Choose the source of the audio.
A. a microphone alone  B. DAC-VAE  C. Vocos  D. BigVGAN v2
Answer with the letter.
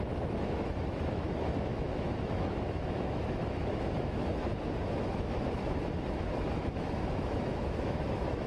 B